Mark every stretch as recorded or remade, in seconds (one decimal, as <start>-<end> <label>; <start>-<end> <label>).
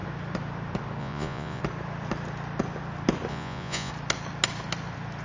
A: 0.0-1.0 recorded; 1.0-1.6 remade; 1.6-3.3 recorded; 3.3-3.9 remade; 3.9-5.2 recorded